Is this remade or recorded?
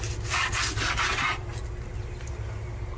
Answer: recorded